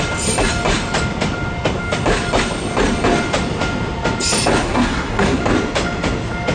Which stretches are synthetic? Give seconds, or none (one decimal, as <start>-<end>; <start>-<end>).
4.6-5.4